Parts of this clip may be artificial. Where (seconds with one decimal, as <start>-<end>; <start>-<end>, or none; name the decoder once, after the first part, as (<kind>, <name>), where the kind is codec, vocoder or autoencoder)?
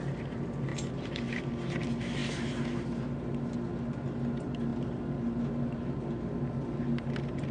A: none